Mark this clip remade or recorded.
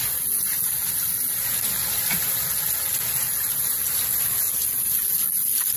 recorded